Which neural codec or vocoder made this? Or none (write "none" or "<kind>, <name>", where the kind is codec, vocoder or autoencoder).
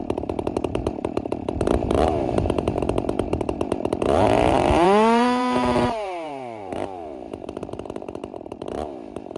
vocoder, BigVGAN v2